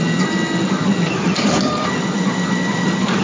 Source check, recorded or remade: remade